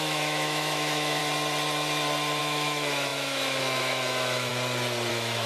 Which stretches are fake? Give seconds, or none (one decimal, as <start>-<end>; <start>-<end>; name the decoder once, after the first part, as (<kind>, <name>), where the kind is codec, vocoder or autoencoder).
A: 0.0-1.2 (autoencoder, DAC-VAE); 2.4-4.5; 5.1-5.5